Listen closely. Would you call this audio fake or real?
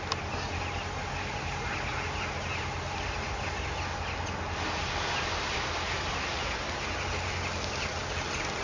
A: real